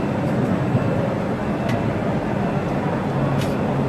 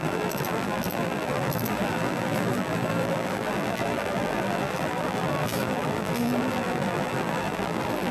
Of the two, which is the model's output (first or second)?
second